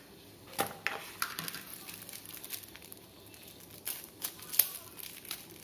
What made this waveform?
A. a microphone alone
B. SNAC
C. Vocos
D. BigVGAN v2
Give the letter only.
A